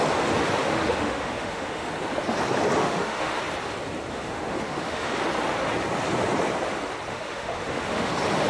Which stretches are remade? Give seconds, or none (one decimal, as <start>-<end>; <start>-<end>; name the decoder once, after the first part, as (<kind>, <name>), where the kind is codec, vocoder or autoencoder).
0.6-1.9 (autoencoder, DAC-VAE); 2.8-3.4; 4.1-5.2; 7.1-8.1